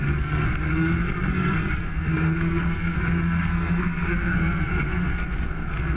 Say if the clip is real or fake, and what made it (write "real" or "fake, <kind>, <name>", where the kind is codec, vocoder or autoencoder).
fake, codec, SNAC